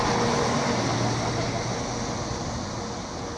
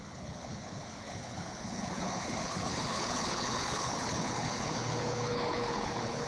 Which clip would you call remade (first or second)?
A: second